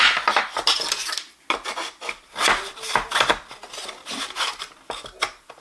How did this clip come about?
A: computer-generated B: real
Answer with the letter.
B